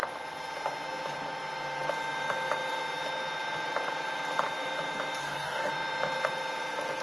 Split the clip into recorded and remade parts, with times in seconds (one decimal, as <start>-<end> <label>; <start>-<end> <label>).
0.0-5.2 recorded; 5.2-5.7 remade; 5.7-7.0 recorded